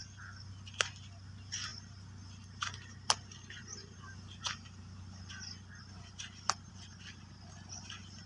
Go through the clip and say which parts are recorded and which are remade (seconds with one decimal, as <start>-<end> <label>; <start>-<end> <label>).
0.0-8.3 recorded